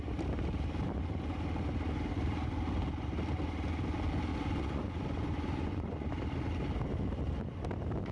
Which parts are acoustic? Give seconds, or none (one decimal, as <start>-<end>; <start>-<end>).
0.0-4.3; 6.1-8.1